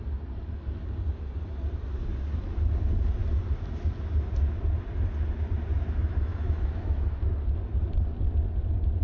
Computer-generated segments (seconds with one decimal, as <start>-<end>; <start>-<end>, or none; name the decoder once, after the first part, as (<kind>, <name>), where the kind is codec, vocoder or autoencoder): 5.7-7.2 (autoencoder, DAC-VAE)